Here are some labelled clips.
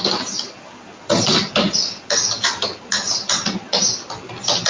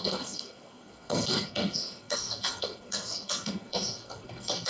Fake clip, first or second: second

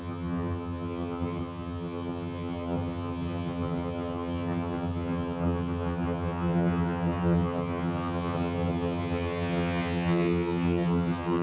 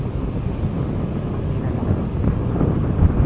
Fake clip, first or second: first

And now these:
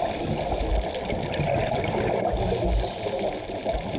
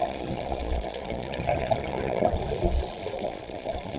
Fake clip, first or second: second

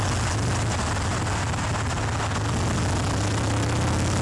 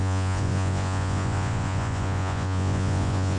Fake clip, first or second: second